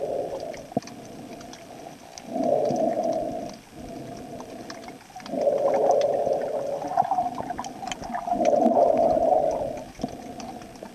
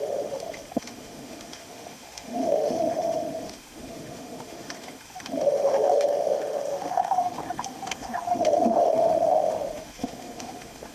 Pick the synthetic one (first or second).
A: second